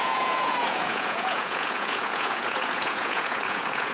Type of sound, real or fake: fake